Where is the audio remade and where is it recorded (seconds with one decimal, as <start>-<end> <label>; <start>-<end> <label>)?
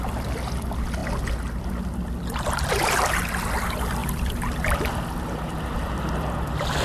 0.0-6.8 recorded